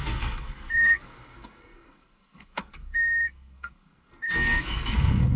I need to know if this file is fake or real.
fake